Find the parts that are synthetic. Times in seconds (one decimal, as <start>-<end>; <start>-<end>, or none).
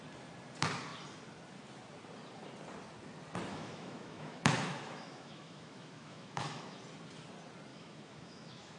3.5-6.8; 7.7-8.8